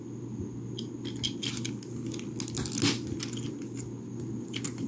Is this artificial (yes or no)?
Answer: no